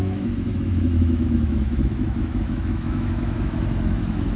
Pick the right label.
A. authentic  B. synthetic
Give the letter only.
B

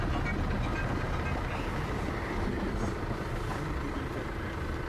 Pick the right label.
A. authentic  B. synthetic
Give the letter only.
A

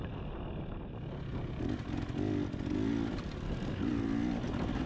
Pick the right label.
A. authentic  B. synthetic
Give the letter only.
A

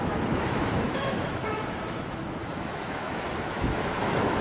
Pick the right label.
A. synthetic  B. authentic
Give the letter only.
A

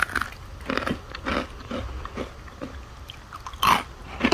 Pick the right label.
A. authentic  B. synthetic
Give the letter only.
A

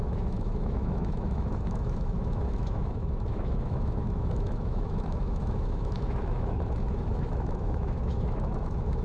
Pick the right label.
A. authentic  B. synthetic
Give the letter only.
B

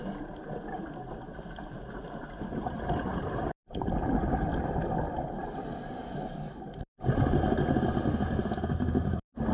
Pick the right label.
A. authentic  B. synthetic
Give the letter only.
A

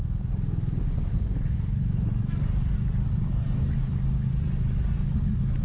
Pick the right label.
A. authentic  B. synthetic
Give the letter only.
A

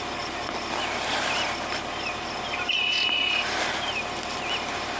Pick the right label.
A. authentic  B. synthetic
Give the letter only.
A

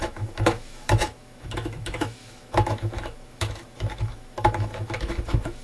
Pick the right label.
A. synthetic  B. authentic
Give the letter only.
A